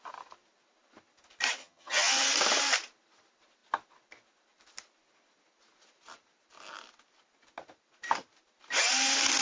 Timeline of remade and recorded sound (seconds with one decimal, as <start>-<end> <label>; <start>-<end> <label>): 0.0-1.6 recorded; 1.6-2.1 remade; 2.1-9.4 recorded